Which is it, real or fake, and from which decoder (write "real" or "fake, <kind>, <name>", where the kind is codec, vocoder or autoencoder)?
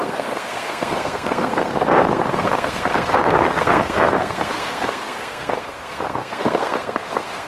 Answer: fake, codec, SNAC